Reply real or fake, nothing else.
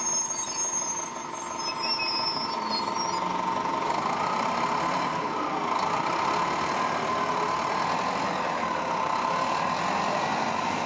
real